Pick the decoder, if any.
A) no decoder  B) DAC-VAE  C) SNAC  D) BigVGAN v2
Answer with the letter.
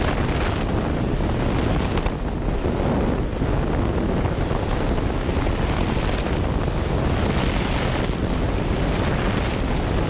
A